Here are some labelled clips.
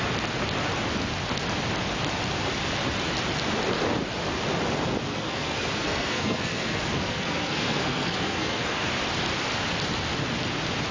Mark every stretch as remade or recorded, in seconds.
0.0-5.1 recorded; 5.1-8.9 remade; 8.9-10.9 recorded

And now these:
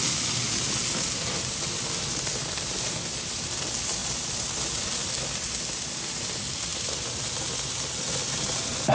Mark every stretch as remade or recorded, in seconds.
0.0-8.9 recorded

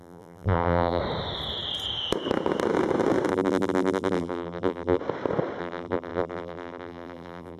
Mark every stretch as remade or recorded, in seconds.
0.0-1.0 remade; 1.0-3.3 recorded; 3.3-5.0 remade; 5.0-5.6 recorded; 5.6-7.6 remade

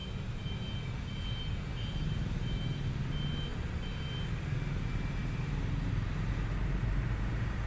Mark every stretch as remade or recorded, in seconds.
0.0-7.7 recorded